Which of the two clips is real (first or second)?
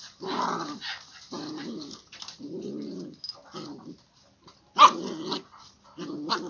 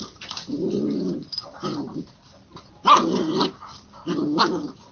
first